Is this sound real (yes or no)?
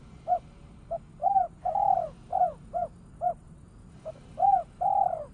yes